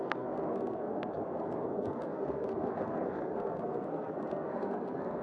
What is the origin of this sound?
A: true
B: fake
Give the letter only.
B